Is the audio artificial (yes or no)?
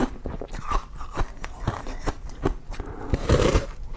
yes